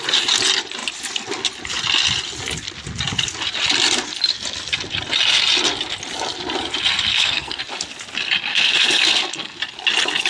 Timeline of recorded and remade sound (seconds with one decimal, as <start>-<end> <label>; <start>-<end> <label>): 0.0-7.1 recorded; 7.1-7.6 remade; 7.6-8.5 recorded; 8.5-9.6 remade; 9.6-10.3 recorded